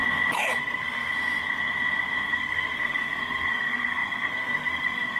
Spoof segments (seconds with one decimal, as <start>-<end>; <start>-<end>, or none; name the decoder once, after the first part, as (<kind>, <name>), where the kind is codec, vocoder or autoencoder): 0.6-1.1 (codec, SNAC); 2.3-5.2

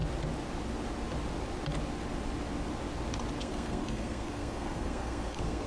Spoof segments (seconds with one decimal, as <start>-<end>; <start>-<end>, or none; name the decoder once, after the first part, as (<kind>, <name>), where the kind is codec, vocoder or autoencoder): 3.4-5.7 (codec, SNAC)

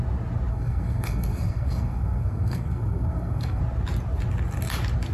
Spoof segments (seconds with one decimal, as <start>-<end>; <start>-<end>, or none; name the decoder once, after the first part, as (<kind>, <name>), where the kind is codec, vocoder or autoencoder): 0.5-3.6 (codec, SNAC)

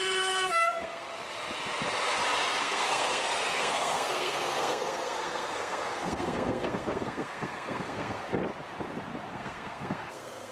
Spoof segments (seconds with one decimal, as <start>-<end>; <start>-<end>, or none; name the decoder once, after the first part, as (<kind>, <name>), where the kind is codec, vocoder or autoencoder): 0.0-1.1 (codec, SNAC); 2.6-8.4; 9.3-10.5